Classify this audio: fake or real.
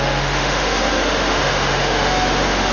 fake